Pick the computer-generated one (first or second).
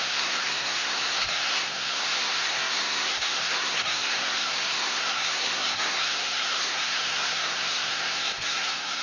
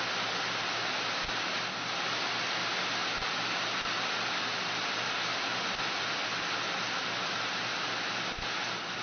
first